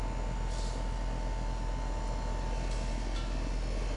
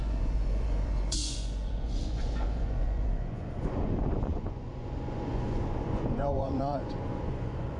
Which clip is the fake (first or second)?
second